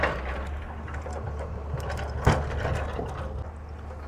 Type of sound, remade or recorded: recorded